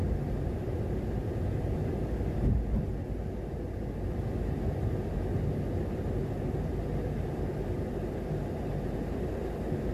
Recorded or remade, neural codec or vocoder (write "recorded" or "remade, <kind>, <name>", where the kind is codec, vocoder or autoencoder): recorded